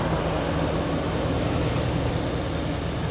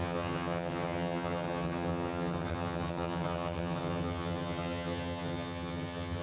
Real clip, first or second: first